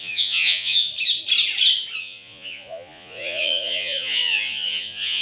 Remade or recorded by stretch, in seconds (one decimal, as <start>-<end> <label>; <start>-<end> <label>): 0.0-0.9 remade; 0.9-2.0 recorded; 2.0-5.2 remade